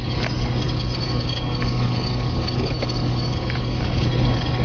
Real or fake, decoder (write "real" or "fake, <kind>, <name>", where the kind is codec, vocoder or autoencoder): fake, codec, DAC